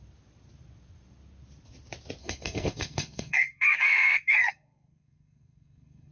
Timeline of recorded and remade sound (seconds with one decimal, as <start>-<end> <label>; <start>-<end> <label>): 0.0-2.2 recorded; 2.2-6.1 remade

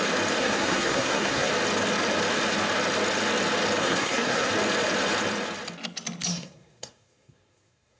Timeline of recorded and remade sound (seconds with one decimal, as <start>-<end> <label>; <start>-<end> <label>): 0.0-0.4 recorded; 0.4-1.5 remade; 1.5-3.8 recorded; 3.8-4.5 remade; 4.5-6.3 recorded; 6.3-8.0 remade